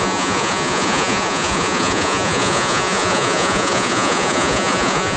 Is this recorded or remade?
remade